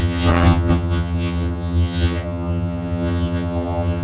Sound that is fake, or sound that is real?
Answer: fake